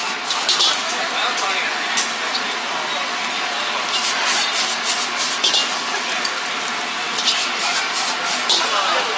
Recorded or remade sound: recorded